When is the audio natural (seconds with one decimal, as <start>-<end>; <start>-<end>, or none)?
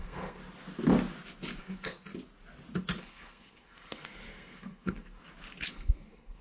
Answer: 0.4-1.6; 2.1-3.0; 5.2-5.7